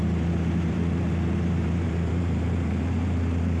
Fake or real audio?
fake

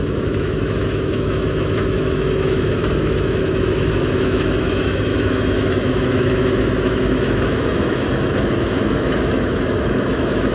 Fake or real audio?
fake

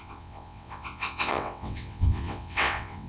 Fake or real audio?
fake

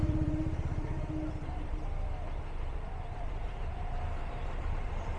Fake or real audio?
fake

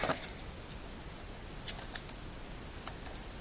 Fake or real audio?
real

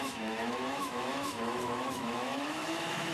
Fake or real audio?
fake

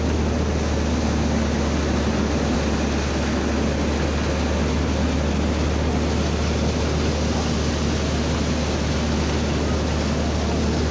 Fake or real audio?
real